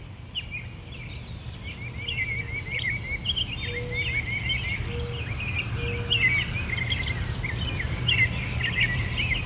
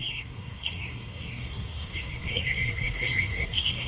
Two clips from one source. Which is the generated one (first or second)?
second